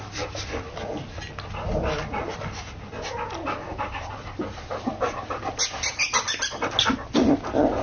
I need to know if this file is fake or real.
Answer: real